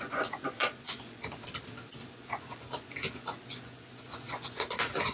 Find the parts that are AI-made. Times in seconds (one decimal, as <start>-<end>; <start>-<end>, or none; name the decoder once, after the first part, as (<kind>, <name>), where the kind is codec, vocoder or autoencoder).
0.0-1.4 (vocoder, Vocos); 2.0-5.1